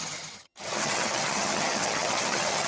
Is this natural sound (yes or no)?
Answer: no